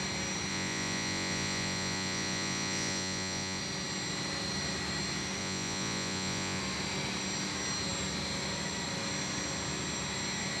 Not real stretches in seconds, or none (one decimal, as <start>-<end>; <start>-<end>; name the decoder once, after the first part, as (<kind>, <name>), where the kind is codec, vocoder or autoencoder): 0.5-3.6 (vocoder, Vocos); 5.4-6.6